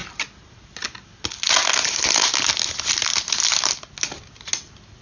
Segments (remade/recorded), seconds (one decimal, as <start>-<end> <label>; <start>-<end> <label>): 0.0-5.0 recorded